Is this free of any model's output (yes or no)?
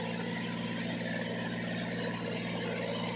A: yes